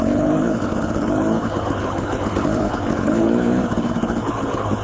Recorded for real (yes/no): no